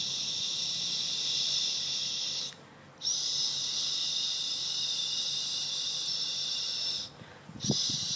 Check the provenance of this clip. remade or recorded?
recorded